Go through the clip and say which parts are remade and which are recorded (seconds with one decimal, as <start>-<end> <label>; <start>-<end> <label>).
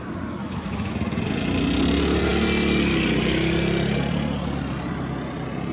0.0-0.4 recorded; 0.4-0.9 remade; 0.9-5.7 recorded